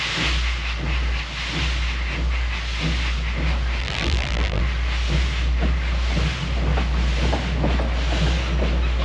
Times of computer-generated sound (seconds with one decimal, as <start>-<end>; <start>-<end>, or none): 3.8-4.6